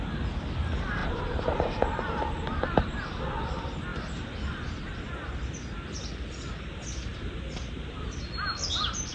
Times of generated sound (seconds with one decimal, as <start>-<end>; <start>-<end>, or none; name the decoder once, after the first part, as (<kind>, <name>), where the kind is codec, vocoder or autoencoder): 1.0-3.1 (vocoder, BigVGAN v2); 7.1-8.2

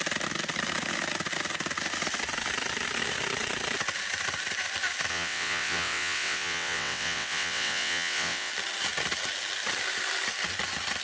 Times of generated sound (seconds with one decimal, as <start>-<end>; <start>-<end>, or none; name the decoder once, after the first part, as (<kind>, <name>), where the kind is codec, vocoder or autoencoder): 5.1-8.5 (vocoder, WaveNeXt)

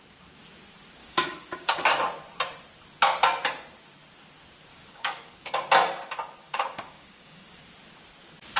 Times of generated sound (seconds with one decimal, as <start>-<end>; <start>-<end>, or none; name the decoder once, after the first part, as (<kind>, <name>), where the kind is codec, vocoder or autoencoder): 1.0-1.7 (codec, DAC); 4.7-5.5; 6.4-7.6

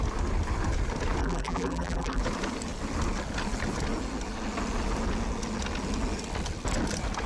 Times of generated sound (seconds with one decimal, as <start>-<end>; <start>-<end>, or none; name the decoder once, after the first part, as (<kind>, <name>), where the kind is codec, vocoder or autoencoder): 1.2-2.2 (vocoder, BigVGAN v2)

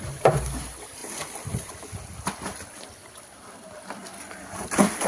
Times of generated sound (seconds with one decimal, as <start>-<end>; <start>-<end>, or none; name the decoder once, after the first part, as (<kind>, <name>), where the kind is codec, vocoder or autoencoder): 1.0-1.7 (vocoder, BigVGAN v2)